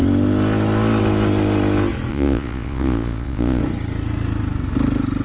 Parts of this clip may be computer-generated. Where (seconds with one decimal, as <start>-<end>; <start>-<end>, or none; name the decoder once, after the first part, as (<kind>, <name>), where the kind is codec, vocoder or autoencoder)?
2.1-3.6 (vocoder, Vocos)